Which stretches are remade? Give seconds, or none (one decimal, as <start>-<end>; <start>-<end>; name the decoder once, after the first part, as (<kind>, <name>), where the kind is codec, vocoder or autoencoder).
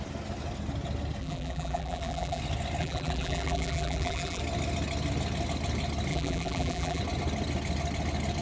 1.2-2.4 (vocoder, BigVGAN v2); 2.8-4.4; 6.1-7.0